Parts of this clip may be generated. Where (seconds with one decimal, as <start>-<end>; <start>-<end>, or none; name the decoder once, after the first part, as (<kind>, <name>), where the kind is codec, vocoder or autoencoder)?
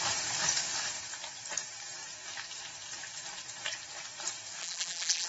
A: 4.6-5.3 (vocoder, BigVGAN v2)